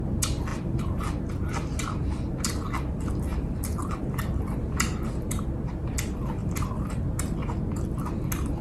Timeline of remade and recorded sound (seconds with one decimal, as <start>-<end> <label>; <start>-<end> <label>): 0.0-0.5 recorded; 0.5-1.2 remade; 1.2-3.3 recorded; 3.3-5.3 remade; 5.3-6.4 recorded; 6.4-6.9 remade; 6.9-8.6 recorded